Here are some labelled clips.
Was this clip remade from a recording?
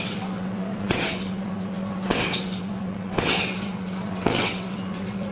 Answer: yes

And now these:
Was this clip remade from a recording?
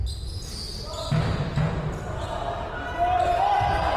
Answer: no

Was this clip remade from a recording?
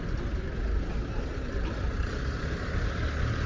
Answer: no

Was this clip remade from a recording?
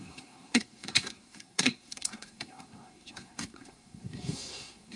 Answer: yes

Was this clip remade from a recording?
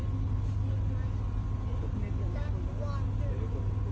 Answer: no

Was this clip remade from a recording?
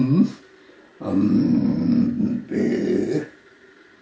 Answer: no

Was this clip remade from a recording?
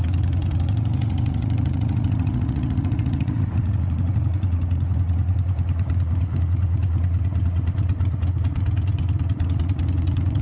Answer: yes